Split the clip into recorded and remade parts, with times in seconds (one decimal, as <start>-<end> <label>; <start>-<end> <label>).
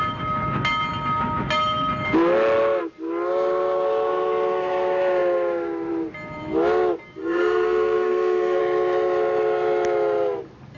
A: 0.0-7.2 recorded; 7.2-8.6 remade; 8.6-10.8 recorded